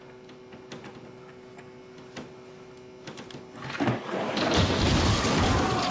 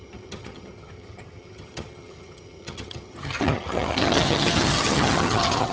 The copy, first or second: second